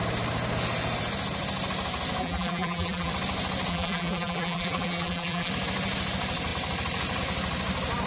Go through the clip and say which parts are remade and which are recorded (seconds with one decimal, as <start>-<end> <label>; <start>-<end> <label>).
0.0-2.2 recorded; 2.2-3.1 remade; 3.1-3.7 recorded; 3.7-5.5 remade; 5.5-8.1 recorded